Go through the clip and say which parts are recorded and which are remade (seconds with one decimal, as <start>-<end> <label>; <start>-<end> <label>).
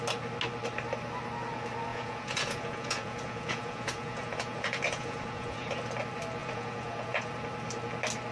0.0-1.9 recorded; 1.9-5.7 remade; 5.7-6.4 recorded; 6.4-7.3 remade; 7.3-8.3 recorded